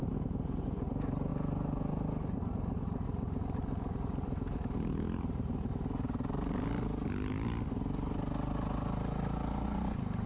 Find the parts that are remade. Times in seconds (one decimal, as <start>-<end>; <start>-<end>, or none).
none

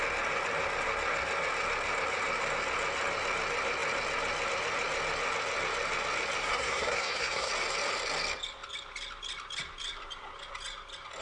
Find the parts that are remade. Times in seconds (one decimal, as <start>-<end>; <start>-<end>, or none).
6.4-7.5

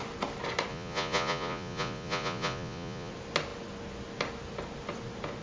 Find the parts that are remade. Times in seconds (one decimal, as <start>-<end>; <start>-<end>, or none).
0.7-3.1

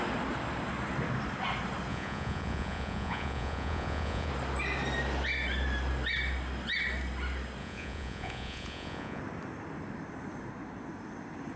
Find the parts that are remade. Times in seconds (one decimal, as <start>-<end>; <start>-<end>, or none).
1.9-4.3; 7.6-9.2

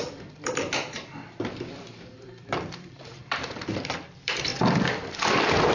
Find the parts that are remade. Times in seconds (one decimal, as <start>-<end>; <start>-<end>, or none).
0.0-5.7

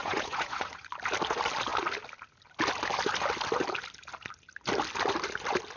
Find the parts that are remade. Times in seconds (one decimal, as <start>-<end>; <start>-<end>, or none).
0.0-0.9